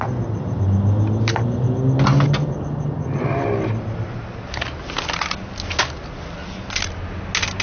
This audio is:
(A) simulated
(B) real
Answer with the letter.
B